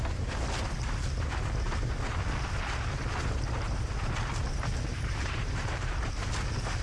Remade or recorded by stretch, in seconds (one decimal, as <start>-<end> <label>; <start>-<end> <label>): 0.0-4.9 recorded; 4.9-6.0 remade; 6.0-6.8 recorded

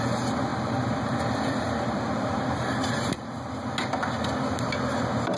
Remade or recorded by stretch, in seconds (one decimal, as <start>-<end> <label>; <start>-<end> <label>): 0.0-0.5 recorded; 0.5-3.7 remade; 3.7-5.4 recorded

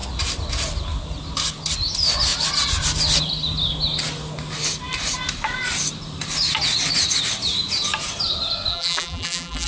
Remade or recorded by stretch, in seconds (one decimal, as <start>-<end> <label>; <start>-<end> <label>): 0.0-8.7 recorded; 8.7-9.7 remade

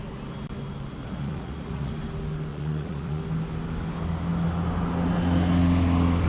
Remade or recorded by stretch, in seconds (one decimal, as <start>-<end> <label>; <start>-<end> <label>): 0.0-1.0 recorded; 1.0-1.9 remade; 1.9-2.5 recorded; 2.5-3.2 remade; 3.2-6.3 recorded

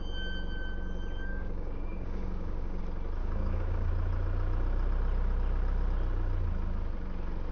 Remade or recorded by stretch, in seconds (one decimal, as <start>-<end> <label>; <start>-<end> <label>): 0.0-1.3 recorded; 1.3-2.8 remade; 2.8-3.2 recorded; 3.2-3.9 remade; 3.9-7.5 recorded